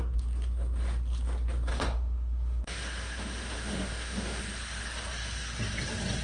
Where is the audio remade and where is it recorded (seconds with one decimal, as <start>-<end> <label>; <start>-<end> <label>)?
0.0-1.7 recorded; 1.7-4.4 remade; 4.4-6.2 recorded